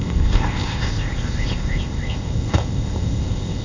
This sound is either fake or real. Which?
fake